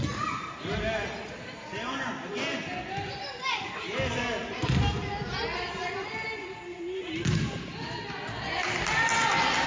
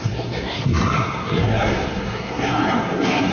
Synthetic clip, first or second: second